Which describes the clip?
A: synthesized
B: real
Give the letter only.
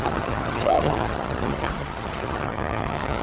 A